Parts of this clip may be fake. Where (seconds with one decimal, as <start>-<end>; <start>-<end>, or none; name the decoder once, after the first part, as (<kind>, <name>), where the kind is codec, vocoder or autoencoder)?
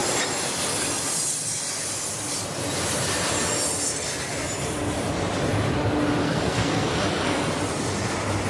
6.2-7.5 (codec, SNAC)